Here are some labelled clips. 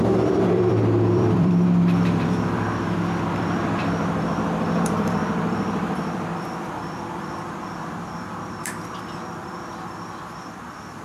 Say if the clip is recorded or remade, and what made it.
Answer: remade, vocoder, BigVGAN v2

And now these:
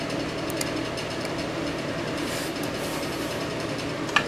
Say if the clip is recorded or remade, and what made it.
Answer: remade, vocoder, BigVGAN v2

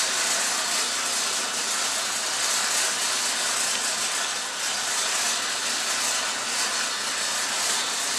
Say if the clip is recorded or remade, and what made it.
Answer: recorded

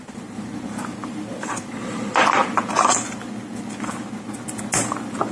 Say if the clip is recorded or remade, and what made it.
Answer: recorded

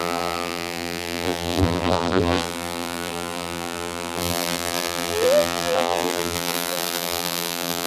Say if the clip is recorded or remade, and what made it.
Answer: remade, vocoder, BigVGAN v2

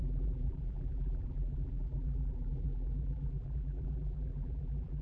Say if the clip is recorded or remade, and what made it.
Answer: remade, vocoder, BigVGAN v2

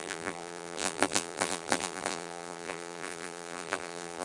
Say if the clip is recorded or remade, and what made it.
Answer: remade, vocoder, BigVGAN v2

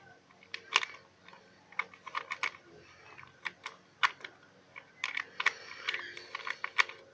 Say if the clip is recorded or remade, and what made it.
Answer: recorded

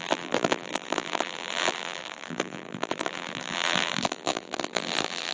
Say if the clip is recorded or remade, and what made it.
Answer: remade, vocoder, BigVGAN v2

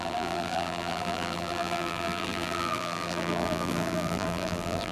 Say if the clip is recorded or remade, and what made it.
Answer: remade, vocoder, BigVGAN v2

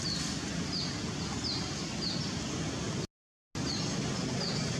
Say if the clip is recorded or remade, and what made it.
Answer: recorded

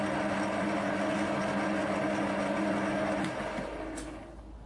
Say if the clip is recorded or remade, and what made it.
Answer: recorded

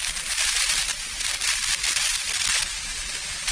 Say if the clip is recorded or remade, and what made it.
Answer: remade, vocoder, BigVGAN v2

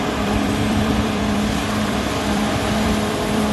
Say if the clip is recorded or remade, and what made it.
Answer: remade, vocoder, BigVGAN v2